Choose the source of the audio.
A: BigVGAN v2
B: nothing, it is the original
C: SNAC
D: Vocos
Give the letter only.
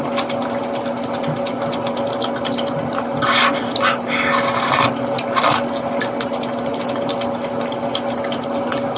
B